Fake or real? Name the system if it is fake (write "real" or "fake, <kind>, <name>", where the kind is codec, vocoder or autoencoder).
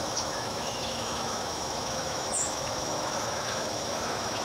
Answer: fake, autoencoder, DAC-VAE